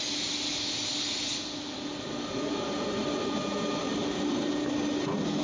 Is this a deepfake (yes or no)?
no